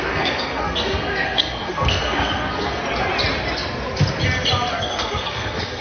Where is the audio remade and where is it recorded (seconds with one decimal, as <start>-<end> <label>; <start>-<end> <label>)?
0.0-2.8 remade; 2.8-4.7 recorded; 4.7-5.8 remade